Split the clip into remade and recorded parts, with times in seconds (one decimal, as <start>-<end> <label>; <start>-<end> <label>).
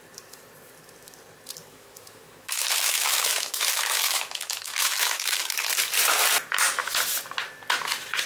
0.0-1.7 recorded; 1.7-5.7 remade; 5.7-8.3 recorded